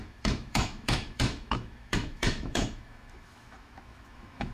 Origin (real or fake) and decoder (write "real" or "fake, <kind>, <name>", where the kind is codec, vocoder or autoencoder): fake, autoencoder, DAC-VAE